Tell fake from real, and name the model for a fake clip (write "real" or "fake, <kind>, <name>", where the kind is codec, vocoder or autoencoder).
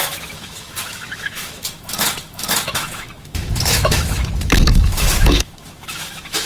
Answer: fake, autoencoder, DAC-VAE